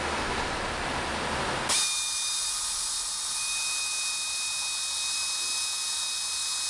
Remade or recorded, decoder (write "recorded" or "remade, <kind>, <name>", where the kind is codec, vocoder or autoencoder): recorded